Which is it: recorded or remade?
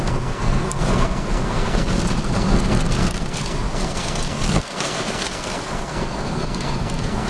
remade